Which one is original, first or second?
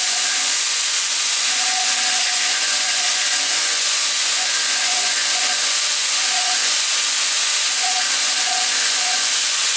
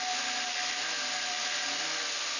second